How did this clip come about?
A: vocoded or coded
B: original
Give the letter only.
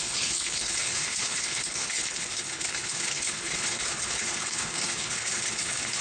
A